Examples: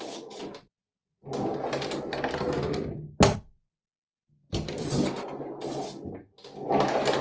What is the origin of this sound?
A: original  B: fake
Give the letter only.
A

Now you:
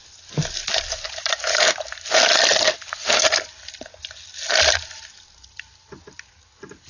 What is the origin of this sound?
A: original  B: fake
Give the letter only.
A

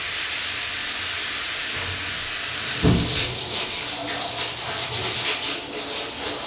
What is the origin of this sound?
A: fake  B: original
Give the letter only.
B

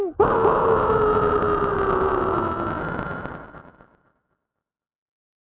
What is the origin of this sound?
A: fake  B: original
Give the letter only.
B